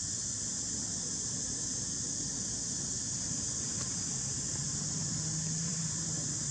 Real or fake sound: fake